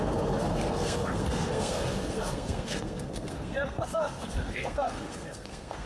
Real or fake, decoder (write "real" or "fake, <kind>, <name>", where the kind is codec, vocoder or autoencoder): fake, codec, SNAC